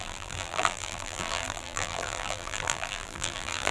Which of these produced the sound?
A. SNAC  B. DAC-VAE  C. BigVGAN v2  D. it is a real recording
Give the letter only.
C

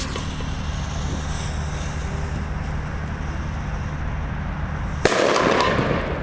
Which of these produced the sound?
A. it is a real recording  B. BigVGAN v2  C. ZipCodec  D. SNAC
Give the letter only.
A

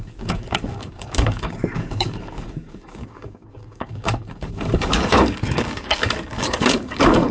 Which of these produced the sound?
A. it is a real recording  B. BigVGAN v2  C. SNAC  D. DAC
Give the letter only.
D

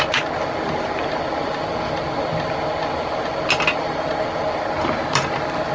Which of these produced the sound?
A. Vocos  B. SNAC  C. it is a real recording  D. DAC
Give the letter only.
C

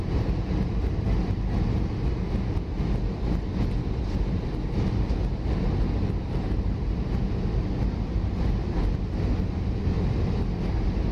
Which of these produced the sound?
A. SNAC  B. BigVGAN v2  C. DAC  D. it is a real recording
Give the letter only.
D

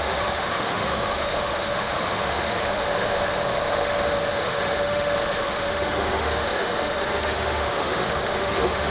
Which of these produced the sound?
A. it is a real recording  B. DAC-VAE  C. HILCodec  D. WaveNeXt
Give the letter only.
B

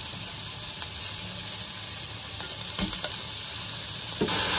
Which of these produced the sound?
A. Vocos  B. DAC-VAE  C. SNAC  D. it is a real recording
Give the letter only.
D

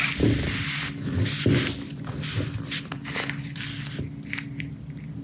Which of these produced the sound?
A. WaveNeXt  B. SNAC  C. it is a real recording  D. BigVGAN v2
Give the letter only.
C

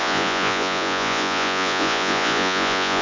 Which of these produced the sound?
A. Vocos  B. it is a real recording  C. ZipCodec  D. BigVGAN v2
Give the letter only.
A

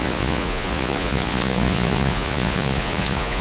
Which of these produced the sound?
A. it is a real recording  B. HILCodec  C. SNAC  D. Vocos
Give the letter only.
D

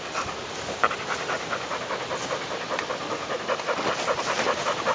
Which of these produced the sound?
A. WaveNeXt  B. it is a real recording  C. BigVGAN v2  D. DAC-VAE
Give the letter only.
B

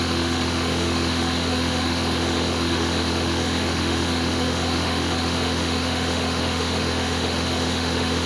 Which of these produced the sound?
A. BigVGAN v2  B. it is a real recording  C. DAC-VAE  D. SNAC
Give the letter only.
C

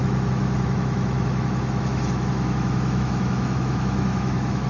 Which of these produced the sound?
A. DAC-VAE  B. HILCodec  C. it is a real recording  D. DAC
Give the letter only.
A